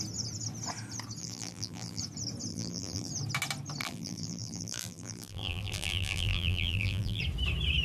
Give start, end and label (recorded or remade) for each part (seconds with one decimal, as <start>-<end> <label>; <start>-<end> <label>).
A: 0.0-1.2 recorded; 1.2-2.0 remade; 2.0-2.5 recorded; 2.5-3.1 remade; 3.1-3.8 recorded; 3.8-7.2 remade; 7.2-7.8 recorded